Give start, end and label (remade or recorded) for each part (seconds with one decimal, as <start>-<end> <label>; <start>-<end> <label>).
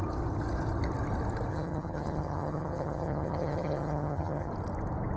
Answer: 0.0-1.5 recorded; 1.5-4.5 remade; 4.5-5.2 recorded